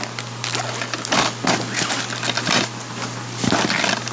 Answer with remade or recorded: recorded